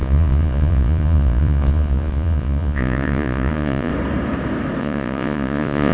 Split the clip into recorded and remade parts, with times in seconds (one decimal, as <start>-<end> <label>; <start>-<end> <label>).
0.0-3.9 remade; 3.9-4.8 recorded; 4.8-5.9 remade